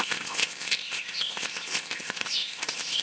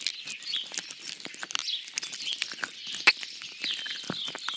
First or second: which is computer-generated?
first